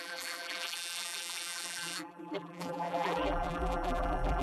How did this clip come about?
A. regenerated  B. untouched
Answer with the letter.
A